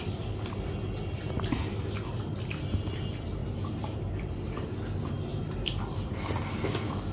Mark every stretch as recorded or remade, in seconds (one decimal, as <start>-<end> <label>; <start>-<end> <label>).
0.0-3.4 recorded; 3.4-4.0 remade; 4.0-5.3 recorded; 5.3-5.8 remade; 5.8-7.1 recorded